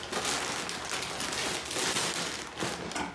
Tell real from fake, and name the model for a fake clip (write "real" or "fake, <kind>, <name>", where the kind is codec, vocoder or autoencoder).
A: real